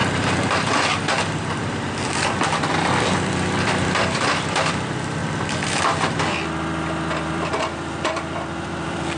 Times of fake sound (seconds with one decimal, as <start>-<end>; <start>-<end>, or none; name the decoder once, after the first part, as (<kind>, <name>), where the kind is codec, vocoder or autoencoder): 0.0-5.2 (vocoder, BigVGAN v2); 5.8-9.2